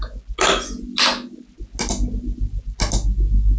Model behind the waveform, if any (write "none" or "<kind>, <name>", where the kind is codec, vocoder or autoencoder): none